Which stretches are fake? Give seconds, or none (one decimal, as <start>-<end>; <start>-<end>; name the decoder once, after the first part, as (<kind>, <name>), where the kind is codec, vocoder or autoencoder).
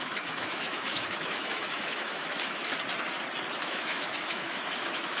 0.0-2.7 (autoencoder, DAC-VAE); 3.6-5.2